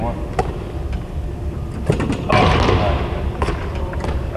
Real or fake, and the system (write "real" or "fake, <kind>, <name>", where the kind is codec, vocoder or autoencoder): real